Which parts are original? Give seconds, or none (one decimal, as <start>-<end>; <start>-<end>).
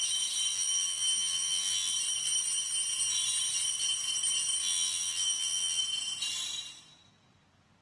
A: 0.0-0.5; 1.9-4.6; 5.8-7.8